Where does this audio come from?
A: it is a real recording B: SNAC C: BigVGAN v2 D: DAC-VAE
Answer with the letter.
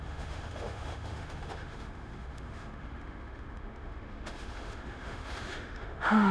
D